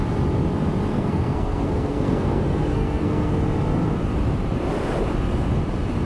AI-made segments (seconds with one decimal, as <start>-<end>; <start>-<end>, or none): 0.9-3.4